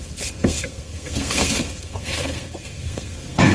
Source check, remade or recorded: remade